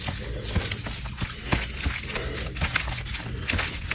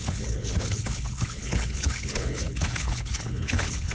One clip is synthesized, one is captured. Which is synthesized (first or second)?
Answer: second